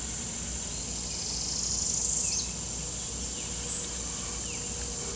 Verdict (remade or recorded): recorded